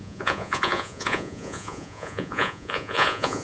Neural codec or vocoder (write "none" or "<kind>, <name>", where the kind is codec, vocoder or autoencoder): vocoder, Vocos